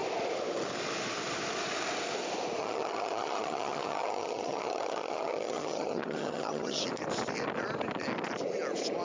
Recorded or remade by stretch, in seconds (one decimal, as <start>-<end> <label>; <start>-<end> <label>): 0.0-2.6 recorded; 2.6-6.8 remade; 6.8-9.0 recorded